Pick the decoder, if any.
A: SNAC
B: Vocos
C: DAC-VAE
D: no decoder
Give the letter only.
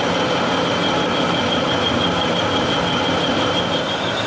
D